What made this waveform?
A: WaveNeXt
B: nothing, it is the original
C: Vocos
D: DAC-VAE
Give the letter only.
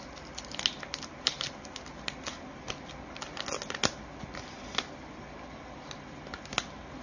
B